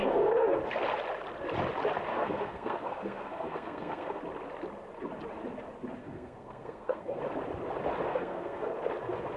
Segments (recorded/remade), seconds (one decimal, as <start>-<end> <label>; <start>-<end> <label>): 0.0-0.6 remade; 0.6-2.1 recorded; 2.1-4.2 remade; 4.2-6.0 recorded; 6.0-7.2 remade; 7.2-8.1 recorded; 8.1-8.8 remade; 8.8-9.4 recorded

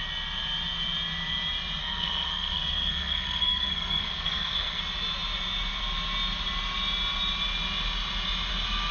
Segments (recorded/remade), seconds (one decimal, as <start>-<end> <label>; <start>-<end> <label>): 0.0-1.8 recorded; 1.8-4.8 remade; 4.8-8.9 recorded

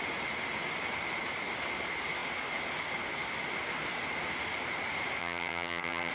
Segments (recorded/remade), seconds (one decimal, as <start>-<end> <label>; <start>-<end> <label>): 0.0-5.2 recorded; 5.2-6.1 remade

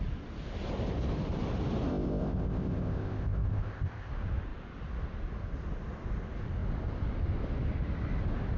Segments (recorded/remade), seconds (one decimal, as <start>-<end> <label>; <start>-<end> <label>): 0.0-1.9 recorded; 1.9-4.1 remade; 4.1-8.6 recorded